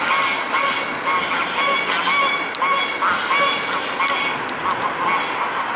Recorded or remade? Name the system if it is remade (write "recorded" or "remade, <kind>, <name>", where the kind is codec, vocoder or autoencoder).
recorded